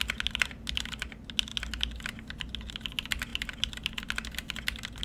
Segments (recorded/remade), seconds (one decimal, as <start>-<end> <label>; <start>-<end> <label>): 0.0-5.0 recorded